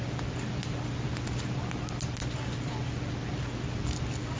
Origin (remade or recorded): recorded